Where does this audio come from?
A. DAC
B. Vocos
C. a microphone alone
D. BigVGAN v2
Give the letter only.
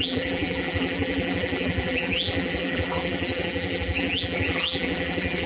D